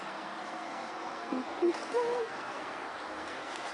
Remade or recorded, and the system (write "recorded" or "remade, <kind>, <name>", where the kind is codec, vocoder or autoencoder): remade, codec, SNAC